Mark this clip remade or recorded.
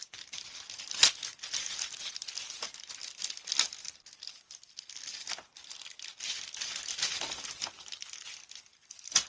recorded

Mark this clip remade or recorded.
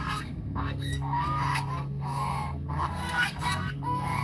remade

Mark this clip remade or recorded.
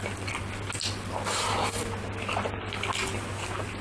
recorded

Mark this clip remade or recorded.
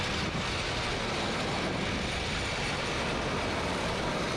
recorded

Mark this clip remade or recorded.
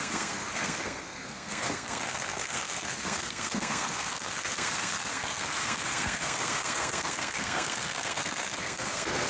remade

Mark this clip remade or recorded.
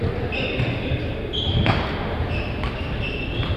recorded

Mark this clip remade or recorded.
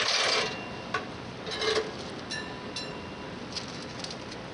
recorded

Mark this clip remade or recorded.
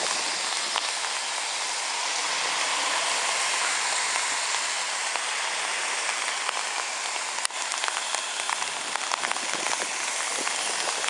recorded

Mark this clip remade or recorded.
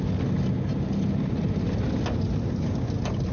recorded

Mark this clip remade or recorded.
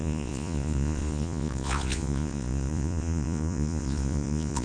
remade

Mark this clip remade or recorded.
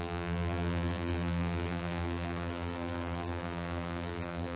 remade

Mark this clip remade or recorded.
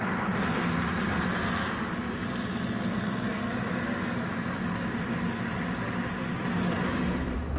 recorded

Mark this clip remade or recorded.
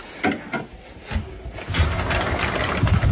recorded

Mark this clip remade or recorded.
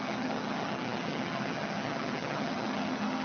remade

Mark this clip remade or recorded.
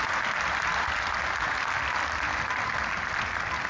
recorded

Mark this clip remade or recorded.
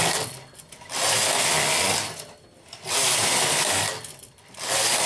recorded